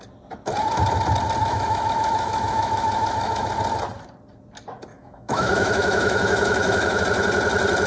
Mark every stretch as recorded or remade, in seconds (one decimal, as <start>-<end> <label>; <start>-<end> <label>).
0.0-1.4 recorded; 1.4-3.5 remade; 3.5-4.9 recorded; 4.9-7.0 remade; 7.0-7.9 recorded